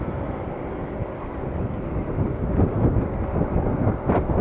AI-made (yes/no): yes